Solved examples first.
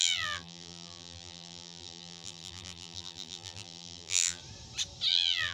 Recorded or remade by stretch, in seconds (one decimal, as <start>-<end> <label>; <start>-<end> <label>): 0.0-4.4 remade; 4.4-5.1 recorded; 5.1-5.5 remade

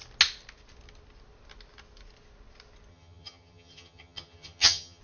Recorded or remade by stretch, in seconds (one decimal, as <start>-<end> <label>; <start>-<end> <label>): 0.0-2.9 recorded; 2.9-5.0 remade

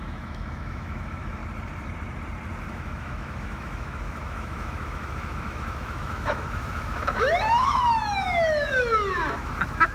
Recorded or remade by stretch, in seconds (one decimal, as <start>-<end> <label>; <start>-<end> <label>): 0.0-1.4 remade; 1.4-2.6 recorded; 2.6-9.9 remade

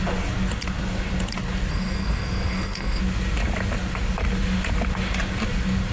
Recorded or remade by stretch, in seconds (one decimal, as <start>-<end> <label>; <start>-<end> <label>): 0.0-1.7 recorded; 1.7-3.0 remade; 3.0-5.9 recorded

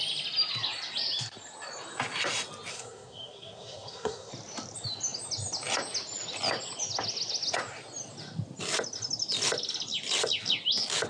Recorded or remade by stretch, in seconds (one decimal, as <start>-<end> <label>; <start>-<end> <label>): 0.0-2.7 recorded; 2.7-4.3 remade; 4.3-11.1 recorded